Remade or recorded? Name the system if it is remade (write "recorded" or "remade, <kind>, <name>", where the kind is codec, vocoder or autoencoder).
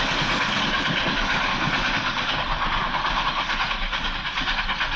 recorded